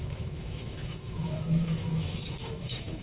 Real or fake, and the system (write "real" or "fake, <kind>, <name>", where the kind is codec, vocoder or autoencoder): fake, autoencoder, DAC-VAE